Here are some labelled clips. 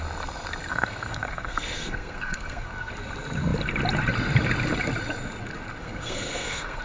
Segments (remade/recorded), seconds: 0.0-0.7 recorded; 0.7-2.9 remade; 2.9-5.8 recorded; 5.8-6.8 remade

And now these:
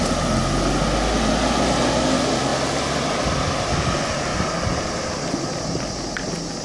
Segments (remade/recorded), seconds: 0.0-6.6 recorded

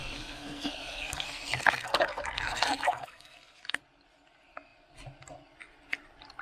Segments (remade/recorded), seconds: 0.0-3.8 remade; 3.8-6.4 recorded

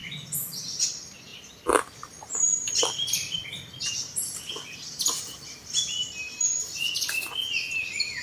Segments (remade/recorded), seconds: 0.0-1.3 recorded; 1.3-1.9 remade; 1.9-2.5 recorded; 2.5-7.4 remade; 7.4-8.2 recorded

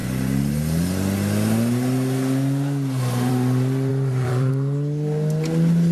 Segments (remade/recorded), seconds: 0.0-3.9 recorded; 3.9-4.5 remade; 4.5-5.9 recorded

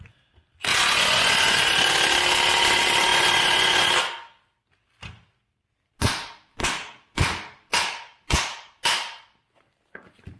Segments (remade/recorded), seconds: 0.0-0.7 recorded; 0.7-2.0 remade; 2.0-3.1 recorded; 3.1-3.9 remade; 3.9-10.4 recorded